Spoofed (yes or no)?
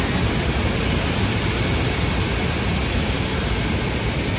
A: no